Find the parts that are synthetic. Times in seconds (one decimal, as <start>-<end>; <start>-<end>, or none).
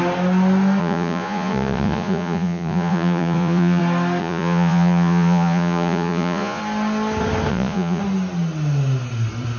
0.8-3.8; 4.2-6.6; 7.5-8.0